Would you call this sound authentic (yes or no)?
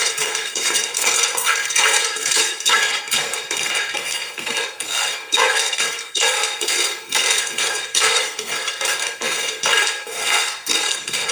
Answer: no